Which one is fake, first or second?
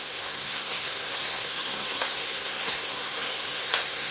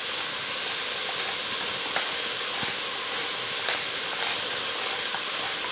first